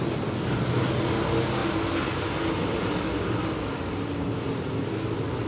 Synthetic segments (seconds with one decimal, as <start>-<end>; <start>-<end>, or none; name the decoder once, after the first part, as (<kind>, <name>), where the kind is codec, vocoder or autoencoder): none